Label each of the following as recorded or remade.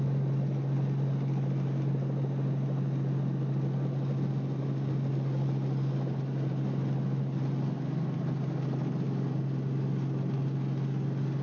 recorded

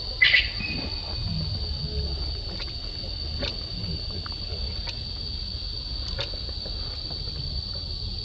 recorded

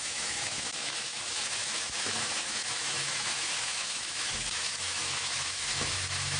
remade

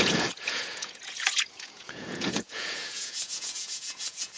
remade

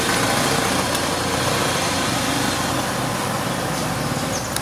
recorded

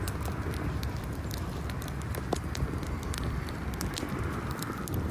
recorded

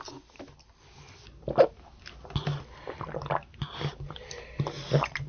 recorded